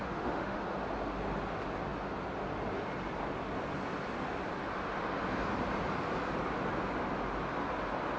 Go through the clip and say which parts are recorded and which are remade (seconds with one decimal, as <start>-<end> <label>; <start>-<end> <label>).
0.0-0.6 remade; 0.6-8.2 recorded